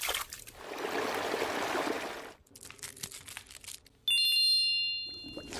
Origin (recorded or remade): recorded